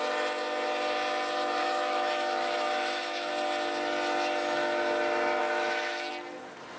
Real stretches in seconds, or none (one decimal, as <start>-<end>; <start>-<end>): 0.0-1.6; 3.3-5.4; 6.1-6.8